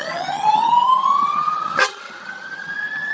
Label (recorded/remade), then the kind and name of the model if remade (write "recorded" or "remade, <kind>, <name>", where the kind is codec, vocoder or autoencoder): remade, vocoder, HiFi-GAN